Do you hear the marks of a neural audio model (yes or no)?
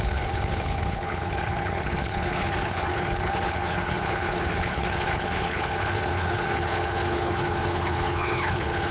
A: yes